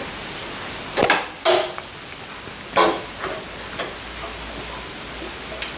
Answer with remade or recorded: recorded